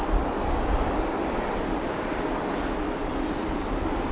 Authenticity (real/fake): real